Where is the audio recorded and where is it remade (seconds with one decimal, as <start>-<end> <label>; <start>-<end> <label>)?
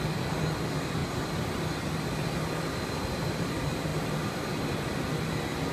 0.0-3.9 recorded; 3.9-4.5 remade; 4.5-5.7 recorded